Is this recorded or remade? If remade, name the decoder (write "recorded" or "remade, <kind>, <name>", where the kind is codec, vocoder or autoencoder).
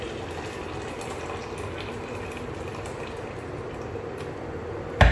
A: recorded